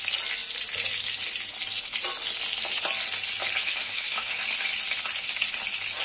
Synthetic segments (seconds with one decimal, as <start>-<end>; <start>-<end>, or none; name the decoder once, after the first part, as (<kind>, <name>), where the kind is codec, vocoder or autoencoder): 3.6-4.4 (autoencoder, DAC-VAE)